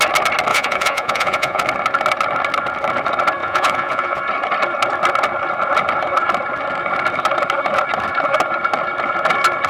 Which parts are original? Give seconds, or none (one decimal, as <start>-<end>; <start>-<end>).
0.0-0.5; 1.6-3.4; 4.2-9.7